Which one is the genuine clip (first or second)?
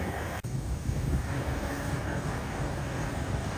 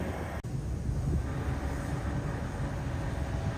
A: second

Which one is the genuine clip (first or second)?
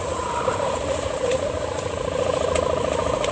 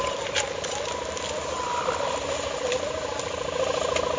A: second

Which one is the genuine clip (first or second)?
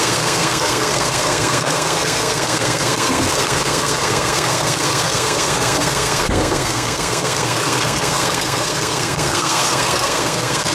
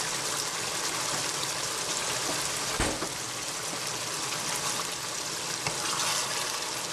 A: second